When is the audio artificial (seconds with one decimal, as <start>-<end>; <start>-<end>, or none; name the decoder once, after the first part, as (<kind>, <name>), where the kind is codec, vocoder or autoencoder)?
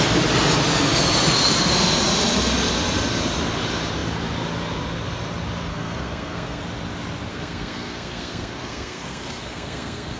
5.7-6.6 (codec, SNAC); 7.3-10.2